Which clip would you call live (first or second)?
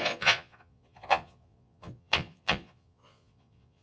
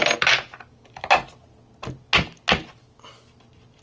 second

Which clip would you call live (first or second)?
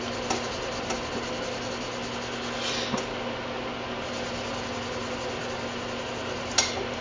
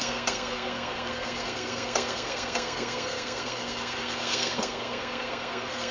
first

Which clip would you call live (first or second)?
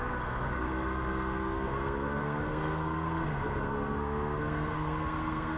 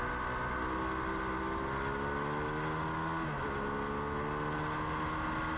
second